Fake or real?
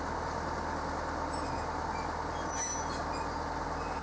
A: real